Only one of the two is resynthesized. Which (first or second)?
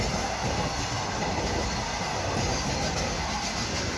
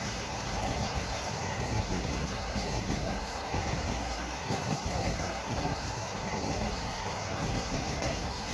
second